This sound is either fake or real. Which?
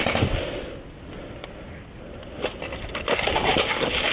real